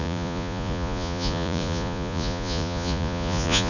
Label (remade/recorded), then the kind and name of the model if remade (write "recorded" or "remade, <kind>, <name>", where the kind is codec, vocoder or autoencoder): remade, vocoder, Vocos